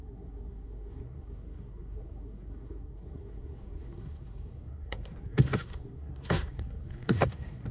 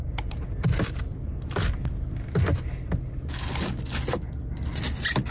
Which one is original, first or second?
second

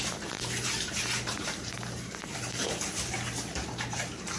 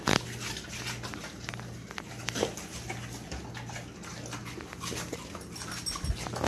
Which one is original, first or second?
second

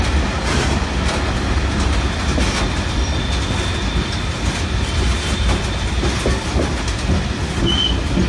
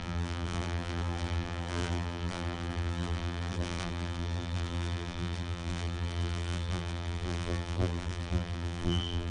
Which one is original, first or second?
first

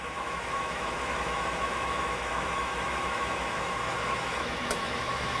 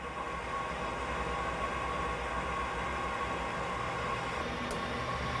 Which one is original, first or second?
second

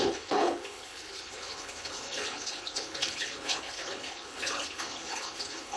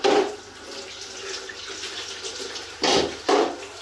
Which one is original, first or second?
second